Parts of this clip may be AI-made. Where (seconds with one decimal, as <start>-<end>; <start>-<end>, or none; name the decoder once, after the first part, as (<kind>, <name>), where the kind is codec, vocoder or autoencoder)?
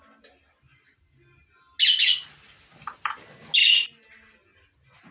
none